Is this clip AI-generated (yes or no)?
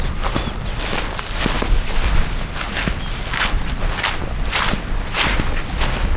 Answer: no